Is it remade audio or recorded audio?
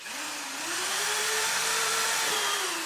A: remade